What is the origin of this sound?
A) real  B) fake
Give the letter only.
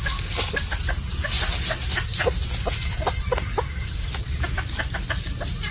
A